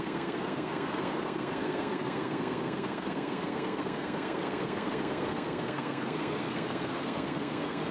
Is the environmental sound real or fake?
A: fake